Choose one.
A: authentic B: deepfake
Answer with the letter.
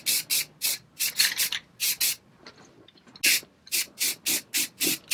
A